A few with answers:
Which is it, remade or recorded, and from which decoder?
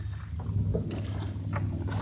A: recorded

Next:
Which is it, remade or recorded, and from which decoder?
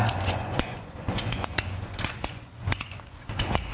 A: remade, vocoder, Vocos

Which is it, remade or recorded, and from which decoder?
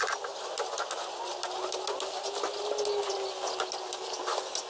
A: recorded